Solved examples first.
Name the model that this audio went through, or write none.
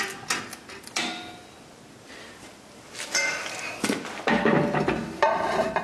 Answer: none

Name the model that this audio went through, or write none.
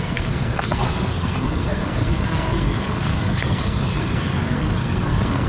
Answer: codec, SNAC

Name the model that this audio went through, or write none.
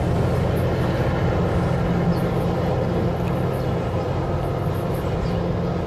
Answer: none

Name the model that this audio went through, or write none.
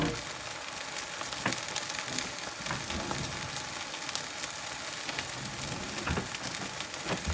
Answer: none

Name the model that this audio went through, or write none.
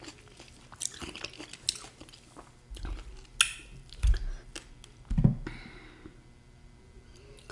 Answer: none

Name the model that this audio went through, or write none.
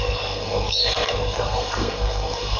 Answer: codec, SNAC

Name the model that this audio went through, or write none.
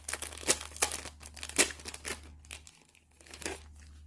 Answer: none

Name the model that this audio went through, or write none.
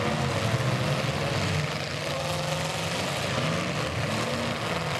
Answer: none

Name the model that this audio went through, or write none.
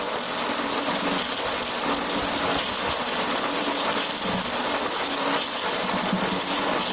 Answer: none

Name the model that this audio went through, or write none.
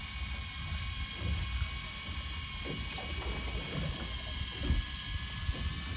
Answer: none